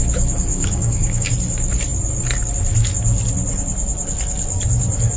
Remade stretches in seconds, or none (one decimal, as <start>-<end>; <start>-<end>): 0.5-1.3